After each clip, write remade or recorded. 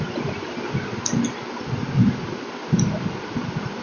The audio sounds recorded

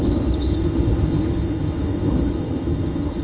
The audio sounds remade